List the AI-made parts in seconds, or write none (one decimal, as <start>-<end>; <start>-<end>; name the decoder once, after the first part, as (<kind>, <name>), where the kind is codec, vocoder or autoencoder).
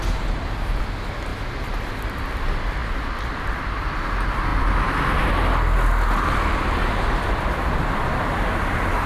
2.8-3.9 (vocoder, BigVGAN v2); 4.5-5.3